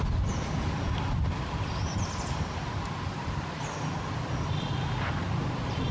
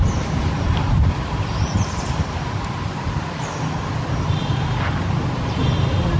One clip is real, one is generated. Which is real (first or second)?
first